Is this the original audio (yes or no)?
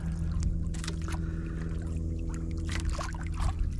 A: yes